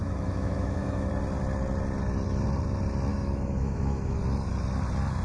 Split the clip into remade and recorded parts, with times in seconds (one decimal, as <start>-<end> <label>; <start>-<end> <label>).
0.0-1.1 remade; 1.1-3.1 recorded; 3.1-4.2 remade; 4.2-5.2 recorded